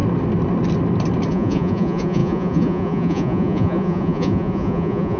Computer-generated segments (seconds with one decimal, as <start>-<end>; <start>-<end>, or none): 1.3-5.2